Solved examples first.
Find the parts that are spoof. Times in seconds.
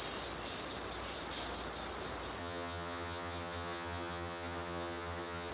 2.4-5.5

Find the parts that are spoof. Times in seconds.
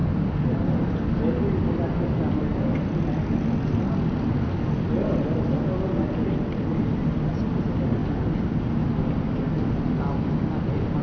none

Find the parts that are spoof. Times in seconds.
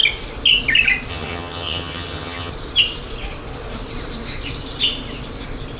1.1-2.5